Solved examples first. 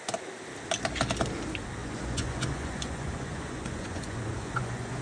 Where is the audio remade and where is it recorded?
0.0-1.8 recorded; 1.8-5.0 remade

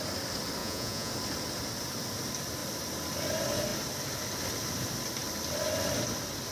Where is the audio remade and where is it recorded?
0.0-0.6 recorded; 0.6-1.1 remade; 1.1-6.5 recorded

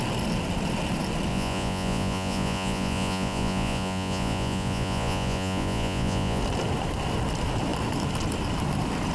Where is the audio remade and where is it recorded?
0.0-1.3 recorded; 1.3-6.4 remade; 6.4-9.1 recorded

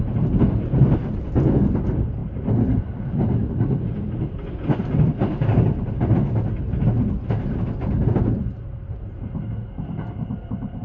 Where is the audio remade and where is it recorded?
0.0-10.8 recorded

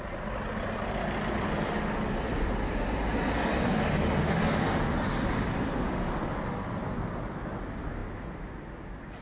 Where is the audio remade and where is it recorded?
0.0-9.2 recorded

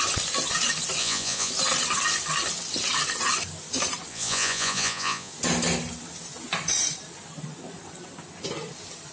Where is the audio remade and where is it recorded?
0.0-1.0 recorded; 1.0-1.5 remade; 1.5-4.1 recorded; 4.1-5.3 remade; 5.3-9.1 recorded

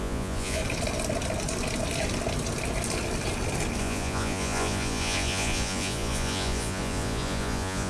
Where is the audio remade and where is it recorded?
0.0-0.6 remade; 0.6-3.8 recorded; 3.8-7.9 remade

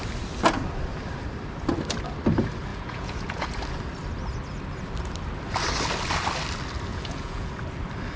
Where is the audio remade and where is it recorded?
0.0-2.7 recorded; 2.7-3.6 remade; 3.6-6.9 recorded; 6.9-7.5 remade; 7.5-8.2 recorded